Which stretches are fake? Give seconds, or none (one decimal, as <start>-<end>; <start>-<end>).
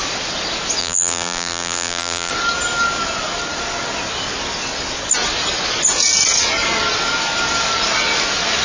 0.8-2.3